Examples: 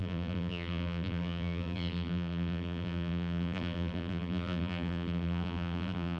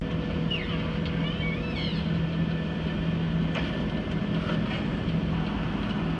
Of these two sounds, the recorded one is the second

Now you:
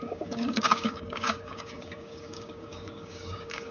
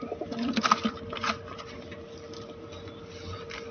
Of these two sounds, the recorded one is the second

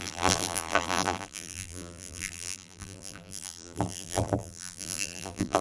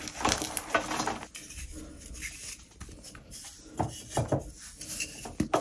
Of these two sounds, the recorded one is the second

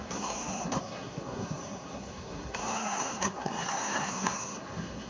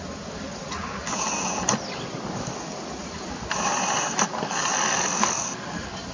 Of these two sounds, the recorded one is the second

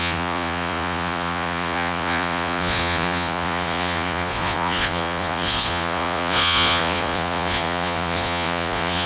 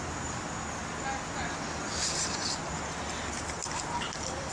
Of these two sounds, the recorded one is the second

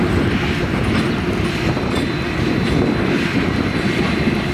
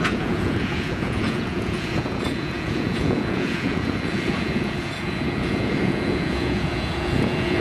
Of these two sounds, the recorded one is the first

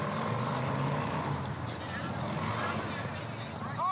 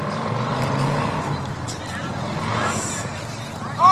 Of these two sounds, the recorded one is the first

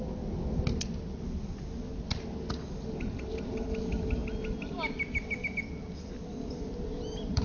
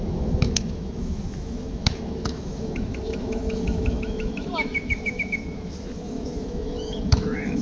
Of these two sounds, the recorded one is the first